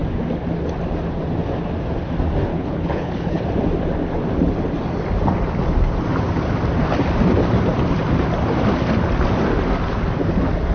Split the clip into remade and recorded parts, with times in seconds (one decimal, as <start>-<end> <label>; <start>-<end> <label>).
0.0-2.5 recorded; 2.5-3.4 remade; 3.4-10.7 recorded